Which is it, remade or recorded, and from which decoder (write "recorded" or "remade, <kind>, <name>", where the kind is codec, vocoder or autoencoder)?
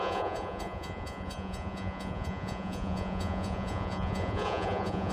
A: remade, vocoder, Vocos